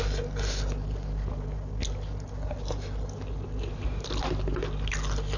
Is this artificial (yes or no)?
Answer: no